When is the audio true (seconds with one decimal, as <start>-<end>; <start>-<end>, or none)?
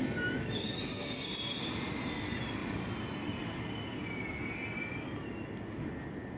0.0-2.6; 3.6-6.4